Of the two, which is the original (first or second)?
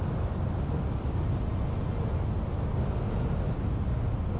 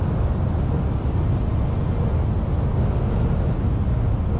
second